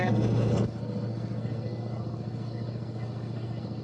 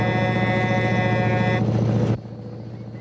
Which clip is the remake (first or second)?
first